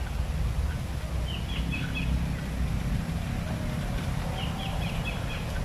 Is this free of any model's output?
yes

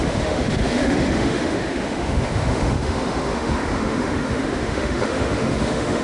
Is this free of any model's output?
no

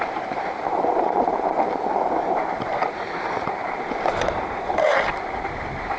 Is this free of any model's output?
no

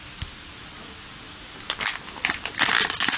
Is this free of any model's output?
yes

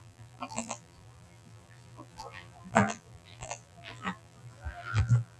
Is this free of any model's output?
no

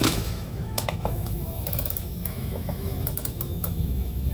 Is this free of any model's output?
no